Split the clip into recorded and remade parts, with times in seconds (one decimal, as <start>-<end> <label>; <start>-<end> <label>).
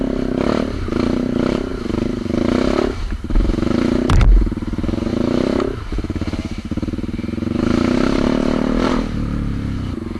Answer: 0.0-10.2 remade